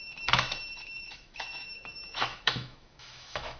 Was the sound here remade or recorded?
remade